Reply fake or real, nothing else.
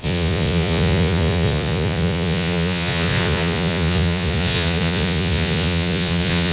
fake